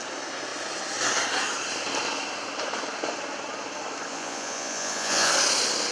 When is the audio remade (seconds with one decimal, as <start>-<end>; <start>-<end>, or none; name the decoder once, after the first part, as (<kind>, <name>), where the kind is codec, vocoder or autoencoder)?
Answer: 4.1-5.3 (vocoder, Vocos)